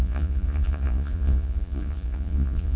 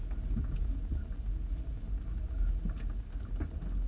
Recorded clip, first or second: second